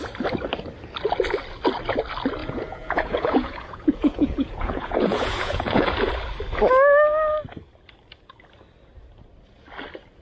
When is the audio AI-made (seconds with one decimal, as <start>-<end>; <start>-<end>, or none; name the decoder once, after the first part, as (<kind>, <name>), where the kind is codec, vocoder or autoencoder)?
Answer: 2.4-5.9 (vocoder, Vocos)